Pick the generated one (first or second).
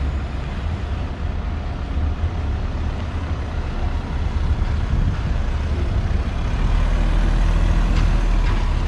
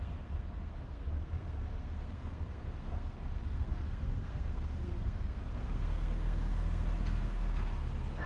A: second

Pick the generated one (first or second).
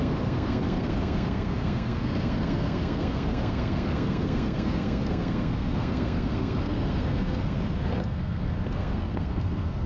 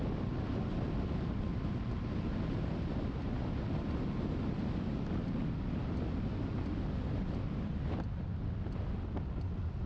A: first